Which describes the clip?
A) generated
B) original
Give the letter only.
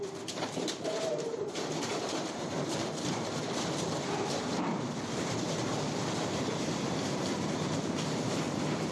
A